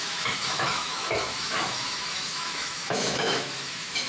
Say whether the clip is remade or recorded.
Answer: remade